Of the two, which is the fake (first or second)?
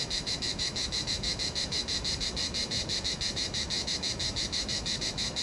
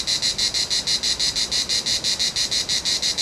first